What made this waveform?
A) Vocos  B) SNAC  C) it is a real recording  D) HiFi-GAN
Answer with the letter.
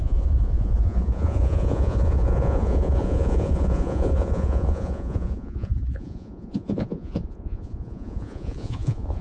A